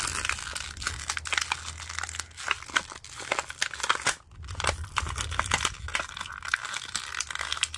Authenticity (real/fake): real